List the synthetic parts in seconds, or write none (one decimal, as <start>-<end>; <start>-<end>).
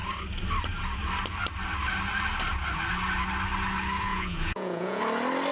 4.1-5.0